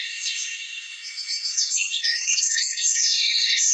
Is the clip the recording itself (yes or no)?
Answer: no